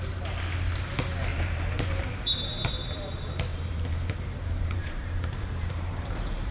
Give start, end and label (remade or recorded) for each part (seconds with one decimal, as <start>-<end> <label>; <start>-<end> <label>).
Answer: 0.0-1.3 recorded; 1.3-2.7 remade; 2.7-3.5 recorded; 3.5-6.5 remade